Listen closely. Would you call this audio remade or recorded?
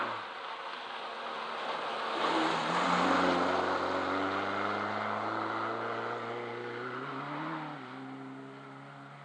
recorded